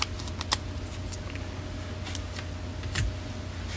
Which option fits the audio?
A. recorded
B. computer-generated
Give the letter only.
A